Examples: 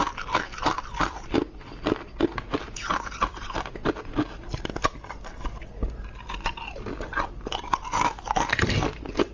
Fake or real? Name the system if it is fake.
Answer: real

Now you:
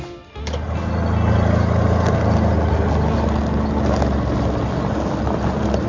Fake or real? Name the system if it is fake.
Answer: real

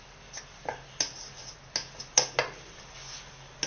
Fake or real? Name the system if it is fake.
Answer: real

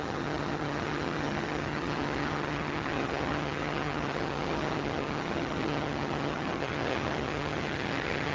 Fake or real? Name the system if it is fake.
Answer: fake, vocoder, HiFi-GAN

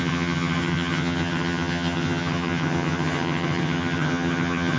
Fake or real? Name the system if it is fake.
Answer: fake, vocoder, HiFi-GAN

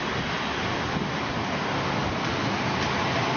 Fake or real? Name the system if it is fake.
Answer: real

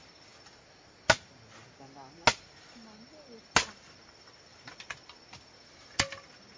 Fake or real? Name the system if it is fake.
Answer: real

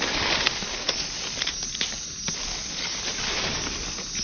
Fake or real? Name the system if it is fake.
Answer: real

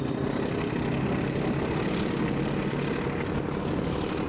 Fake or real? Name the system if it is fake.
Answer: real